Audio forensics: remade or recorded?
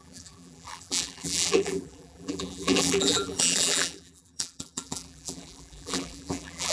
remade